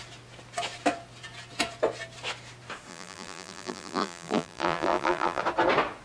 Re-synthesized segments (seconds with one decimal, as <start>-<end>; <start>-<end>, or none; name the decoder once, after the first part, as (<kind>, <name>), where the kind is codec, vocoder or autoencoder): 2.9-5.4 (vocoder, BigVGAN v2)